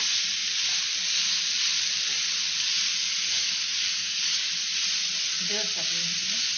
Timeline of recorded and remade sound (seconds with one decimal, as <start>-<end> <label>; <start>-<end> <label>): 0.0-4.0 recorded; 4.0-4.5 remade; 4.5-6.6 recorded